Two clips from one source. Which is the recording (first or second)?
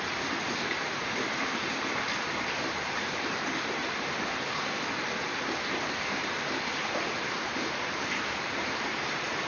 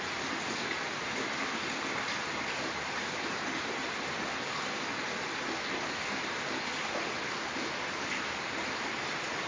second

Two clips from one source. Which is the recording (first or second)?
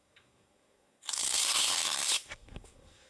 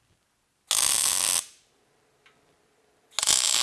second